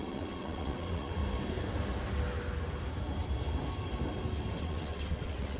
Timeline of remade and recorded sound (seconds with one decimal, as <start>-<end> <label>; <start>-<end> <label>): 0.0-1.2 remade; 1.2-4.6 recorded; 4.6-5.6 remade